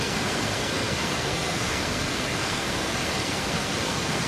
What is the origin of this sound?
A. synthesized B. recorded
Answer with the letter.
A